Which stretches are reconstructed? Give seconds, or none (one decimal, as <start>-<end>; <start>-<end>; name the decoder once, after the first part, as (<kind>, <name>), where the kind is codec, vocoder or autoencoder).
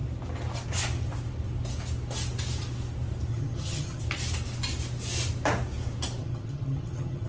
3.3-4.0 (vocoder, HiFi-GAN); 6.2-7.3